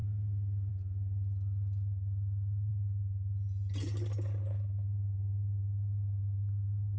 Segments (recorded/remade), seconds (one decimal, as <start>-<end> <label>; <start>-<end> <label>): 0.0-7.0 recorded